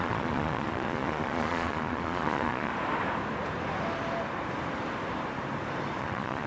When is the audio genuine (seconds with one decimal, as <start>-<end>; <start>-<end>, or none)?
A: 2.7-6.0